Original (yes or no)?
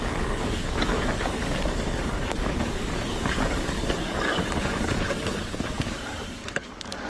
no